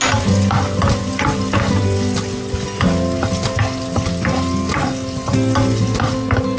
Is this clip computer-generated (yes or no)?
no